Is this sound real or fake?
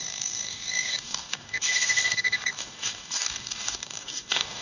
fake